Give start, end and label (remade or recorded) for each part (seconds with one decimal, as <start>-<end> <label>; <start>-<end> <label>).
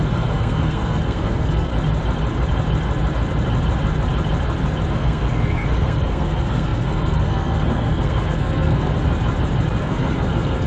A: 0.0-1.7 remade; 1.7-4.9 recorded; 4.9-8.9 remade; 8.9-9.8 recorded; 9.8-10.7 remade